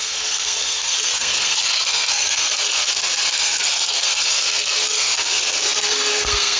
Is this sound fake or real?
fake